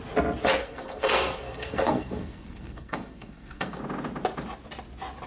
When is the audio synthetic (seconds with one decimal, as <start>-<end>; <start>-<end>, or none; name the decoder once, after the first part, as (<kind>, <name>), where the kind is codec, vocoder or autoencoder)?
0.6-3.8 (codec, SNAC)